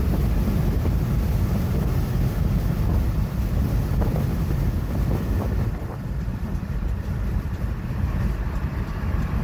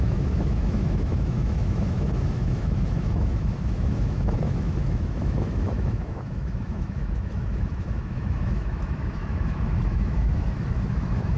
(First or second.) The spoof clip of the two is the second